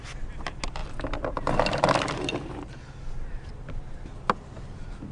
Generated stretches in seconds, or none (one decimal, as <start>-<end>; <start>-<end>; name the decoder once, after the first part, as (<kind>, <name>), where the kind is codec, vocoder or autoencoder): none